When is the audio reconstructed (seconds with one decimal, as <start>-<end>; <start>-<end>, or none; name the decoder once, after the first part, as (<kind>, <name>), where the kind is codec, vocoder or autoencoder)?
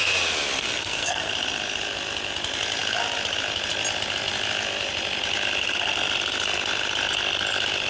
0.6-1.3 (codec, SNAC)